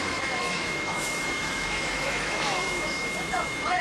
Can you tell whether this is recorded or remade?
remade